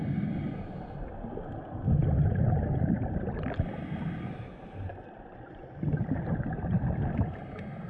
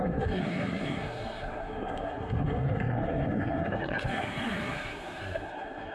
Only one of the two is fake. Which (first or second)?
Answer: second